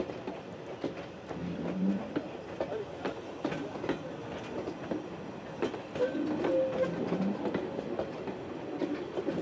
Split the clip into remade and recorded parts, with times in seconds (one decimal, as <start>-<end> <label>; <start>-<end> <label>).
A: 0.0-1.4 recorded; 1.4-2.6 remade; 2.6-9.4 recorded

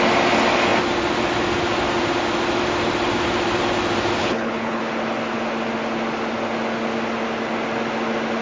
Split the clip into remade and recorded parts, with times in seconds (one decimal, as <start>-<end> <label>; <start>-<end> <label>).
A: 0.0-4.2 recorded; 4.2-4.8 remade; 4.8-8.4 recorded

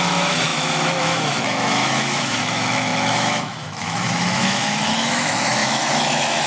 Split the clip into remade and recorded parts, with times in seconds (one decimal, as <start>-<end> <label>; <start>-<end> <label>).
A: 0.0-6.5 remade

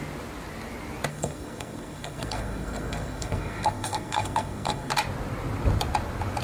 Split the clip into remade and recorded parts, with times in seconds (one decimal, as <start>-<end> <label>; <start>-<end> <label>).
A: 0.0-1.1 recorded; 1.1-4.9 remade; 4.9-6.4 recorded